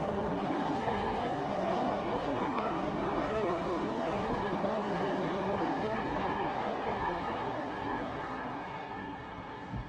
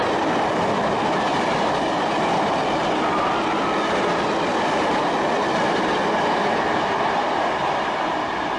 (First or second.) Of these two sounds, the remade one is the first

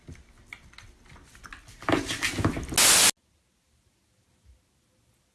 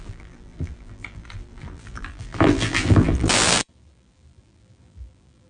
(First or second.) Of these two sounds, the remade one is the second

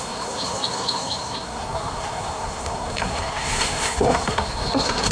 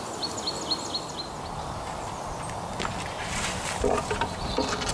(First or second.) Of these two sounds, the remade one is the first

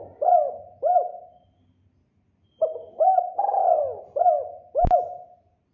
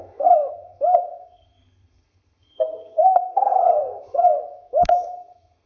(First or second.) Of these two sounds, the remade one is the second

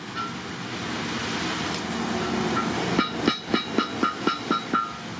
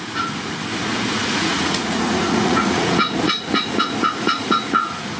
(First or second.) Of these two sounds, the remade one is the second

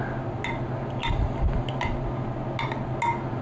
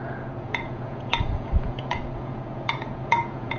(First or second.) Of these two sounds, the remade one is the second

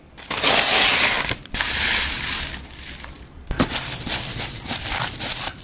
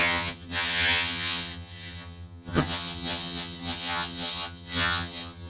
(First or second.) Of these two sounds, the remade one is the second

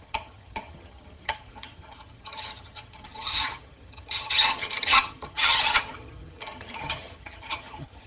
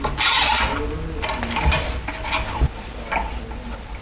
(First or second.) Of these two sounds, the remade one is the first